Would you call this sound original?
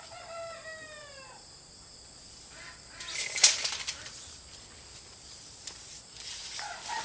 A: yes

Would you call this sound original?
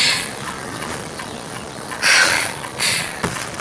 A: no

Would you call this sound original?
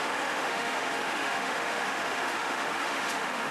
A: no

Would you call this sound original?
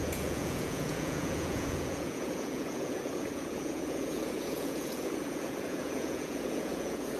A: no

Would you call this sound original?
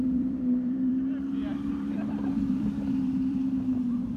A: no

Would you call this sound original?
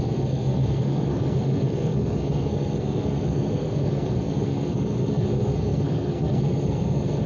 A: no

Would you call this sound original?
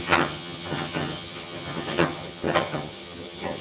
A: no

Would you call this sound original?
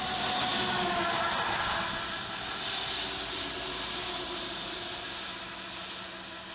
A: yes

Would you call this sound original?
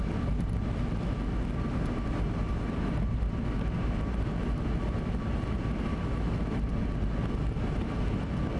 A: yes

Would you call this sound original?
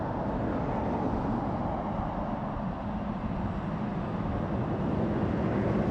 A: yes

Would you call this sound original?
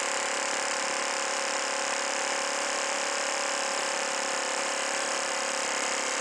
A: no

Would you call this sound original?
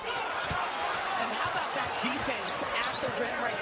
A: no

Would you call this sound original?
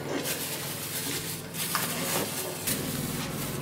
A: yes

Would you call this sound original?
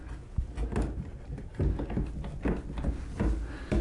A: yes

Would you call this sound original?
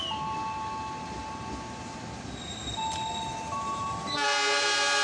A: yes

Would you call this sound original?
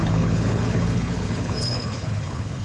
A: no